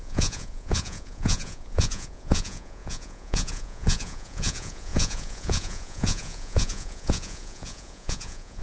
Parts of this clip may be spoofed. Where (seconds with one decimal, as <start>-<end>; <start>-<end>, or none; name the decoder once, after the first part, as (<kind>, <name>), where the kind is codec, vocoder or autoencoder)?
0.0-8.6 (vocoder, Vocos)

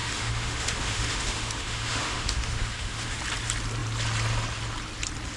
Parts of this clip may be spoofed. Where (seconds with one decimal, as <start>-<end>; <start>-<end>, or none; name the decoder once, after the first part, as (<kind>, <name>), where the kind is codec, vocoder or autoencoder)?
0.0-3.2 (autoencoder, DAC-VAE)

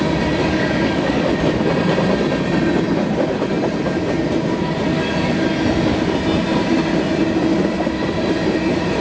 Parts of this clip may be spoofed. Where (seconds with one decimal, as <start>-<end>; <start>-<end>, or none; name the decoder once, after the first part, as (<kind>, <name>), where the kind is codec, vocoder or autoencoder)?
0.4-1.3 (codec, DAC)

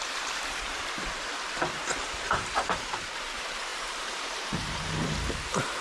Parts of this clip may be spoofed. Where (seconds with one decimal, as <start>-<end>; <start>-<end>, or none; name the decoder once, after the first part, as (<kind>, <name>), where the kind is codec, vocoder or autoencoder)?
0.0-5.8 (vocoder, BigVGAN v2)

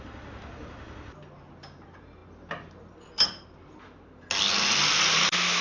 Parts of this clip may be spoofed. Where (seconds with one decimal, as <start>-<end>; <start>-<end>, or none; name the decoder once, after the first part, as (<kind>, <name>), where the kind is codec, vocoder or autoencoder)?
none

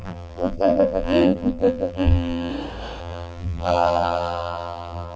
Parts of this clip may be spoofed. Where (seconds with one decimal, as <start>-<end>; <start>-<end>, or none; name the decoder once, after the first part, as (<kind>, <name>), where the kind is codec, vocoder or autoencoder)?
0.0-2.5 (vocoder, BigVGAN v2); 3.0-5.2

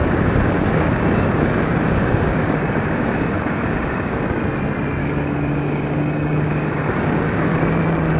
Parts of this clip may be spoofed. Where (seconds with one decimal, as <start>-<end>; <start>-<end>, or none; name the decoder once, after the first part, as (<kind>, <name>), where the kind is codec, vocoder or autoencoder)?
0.0-4.4 (codec, DAC); 5.0-7.6

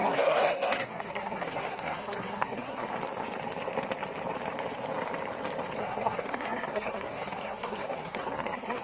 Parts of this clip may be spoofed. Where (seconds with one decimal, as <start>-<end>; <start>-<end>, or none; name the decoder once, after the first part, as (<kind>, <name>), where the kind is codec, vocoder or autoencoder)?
0.0-2.9 (codec, SNAC); 5.8-8.8